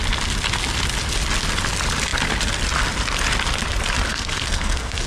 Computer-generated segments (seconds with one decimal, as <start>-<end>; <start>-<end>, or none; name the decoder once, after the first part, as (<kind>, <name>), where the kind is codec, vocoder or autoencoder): 4.1-5.1 (codec, SNAC)